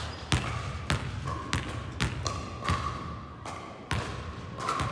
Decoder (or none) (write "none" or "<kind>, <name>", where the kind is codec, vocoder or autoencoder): none